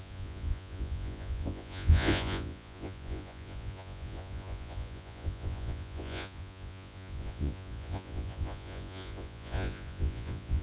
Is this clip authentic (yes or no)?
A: no